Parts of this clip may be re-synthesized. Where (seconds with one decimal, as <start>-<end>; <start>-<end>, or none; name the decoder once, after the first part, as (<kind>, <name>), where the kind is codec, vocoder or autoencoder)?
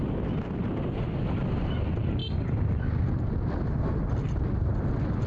none